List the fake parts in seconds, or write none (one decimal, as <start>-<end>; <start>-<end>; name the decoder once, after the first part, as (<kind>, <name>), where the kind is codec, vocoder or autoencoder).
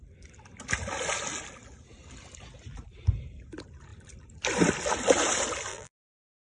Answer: 5.7-6.6 (vocoder, BigVGAN v2)